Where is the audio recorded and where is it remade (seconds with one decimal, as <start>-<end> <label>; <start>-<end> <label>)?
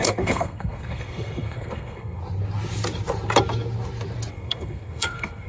0.0-2.2 remade; 2.2-4.3 recorded; 4.3-5.5 remade